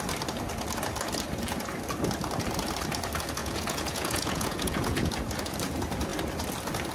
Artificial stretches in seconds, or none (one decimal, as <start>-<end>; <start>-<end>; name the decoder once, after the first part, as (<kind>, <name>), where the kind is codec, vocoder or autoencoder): 3.4-5.1 (vocoder, Vocos)